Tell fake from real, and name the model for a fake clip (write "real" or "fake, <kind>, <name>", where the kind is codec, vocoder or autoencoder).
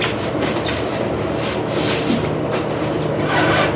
real